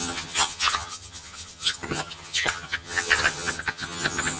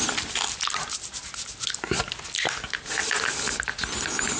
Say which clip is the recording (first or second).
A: second